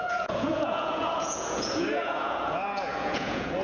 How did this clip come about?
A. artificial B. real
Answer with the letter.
A